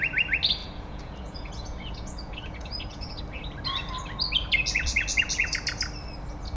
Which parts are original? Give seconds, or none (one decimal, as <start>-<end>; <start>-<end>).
0.0-0.6; 3.2-6.6

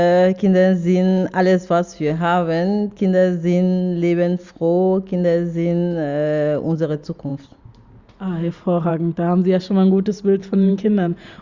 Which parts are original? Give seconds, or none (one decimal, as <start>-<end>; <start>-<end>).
0.0-10.4

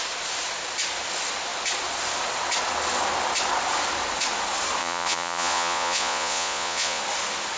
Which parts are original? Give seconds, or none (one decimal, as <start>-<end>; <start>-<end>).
0.0-4.8; 7.0-7.6

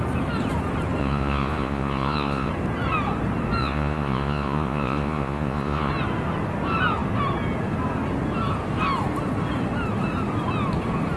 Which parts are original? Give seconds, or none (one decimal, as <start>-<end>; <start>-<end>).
0.0-1.0; 2.5-3.6; 5.9-11.2

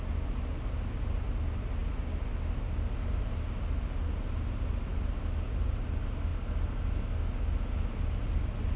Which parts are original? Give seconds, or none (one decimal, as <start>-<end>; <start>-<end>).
0.0-8.8